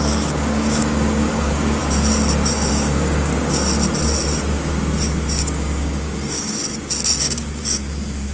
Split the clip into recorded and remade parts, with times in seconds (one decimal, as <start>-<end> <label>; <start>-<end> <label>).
0.0-1.8 remade; 1.8-2.7 recorded; 2.7-3.3 remade; 3.3-5.4 recorded; 5.4-6.6 remade; 6.6-7.2 recorded; 7.2-8.3 remade